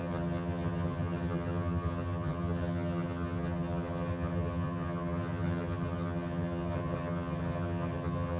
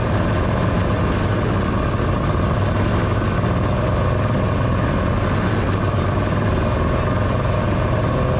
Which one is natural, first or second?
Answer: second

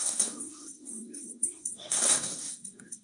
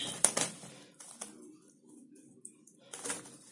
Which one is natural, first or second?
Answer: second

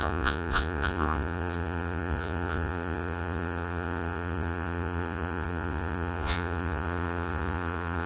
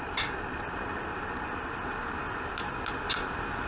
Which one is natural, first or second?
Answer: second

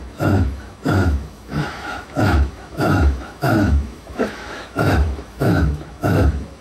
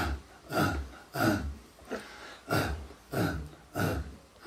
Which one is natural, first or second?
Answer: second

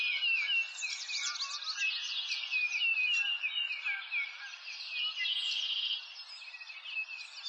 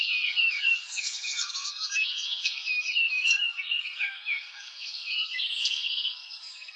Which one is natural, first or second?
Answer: first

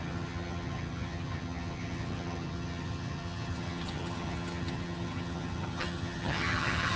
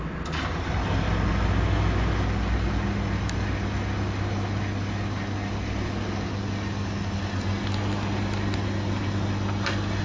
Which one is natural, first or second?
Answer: second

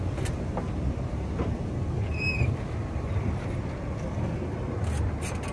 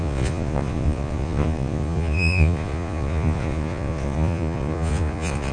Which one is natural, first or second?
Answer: first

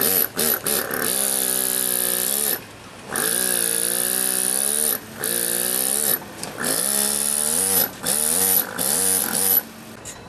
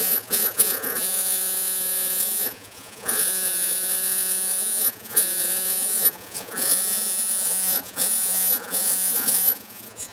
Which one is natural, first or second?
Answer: first